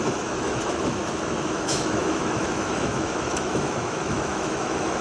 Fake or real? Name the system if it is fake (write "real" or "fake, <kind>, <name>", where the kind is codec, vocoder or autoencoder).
fake, autoencoder, DAC-VAE